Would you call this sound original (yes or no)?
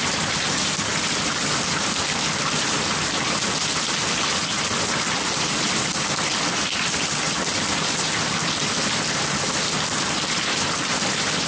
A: yes